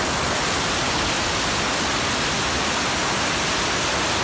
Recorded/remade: recorded